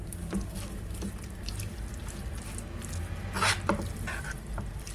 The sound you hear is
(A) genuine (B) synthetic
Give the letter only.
A